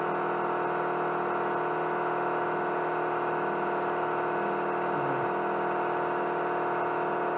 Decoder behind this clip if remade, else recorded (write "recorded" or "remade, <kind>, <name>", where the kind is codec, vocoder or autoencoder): recorded